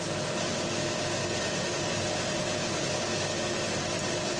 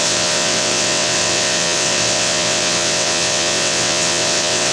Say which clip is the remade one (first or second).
second